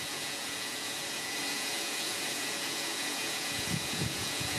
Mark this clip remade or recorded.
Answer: remade